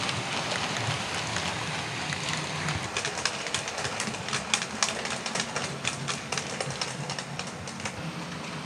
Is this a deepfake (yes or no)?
no